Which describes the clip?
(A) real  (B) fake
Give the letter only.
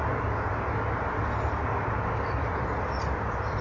A